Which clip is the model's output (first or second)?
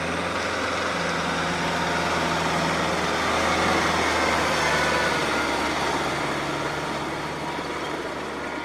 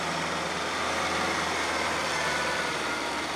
second